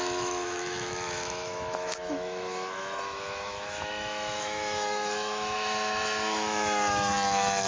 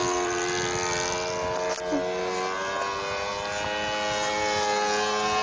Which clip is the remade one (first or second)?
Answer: first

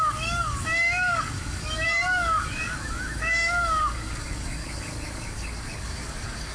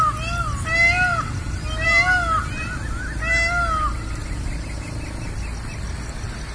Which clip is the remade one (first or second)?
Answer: first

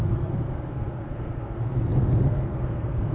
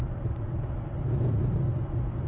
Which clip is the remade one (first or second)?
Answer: first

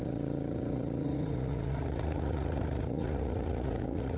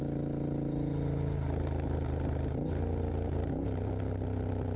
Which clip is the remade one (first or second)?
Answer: first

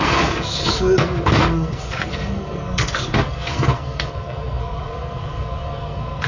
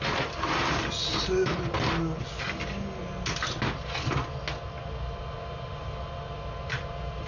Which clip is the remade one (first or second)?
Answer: first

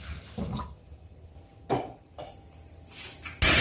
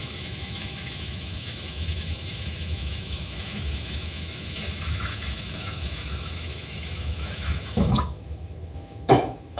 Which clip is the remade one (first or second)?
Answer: second